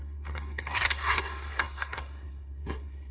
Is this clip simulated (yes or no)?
yes